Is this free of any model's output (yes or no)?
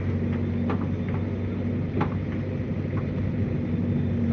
yes